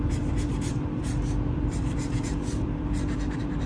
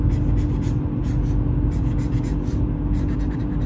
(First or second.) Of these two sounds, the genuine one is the second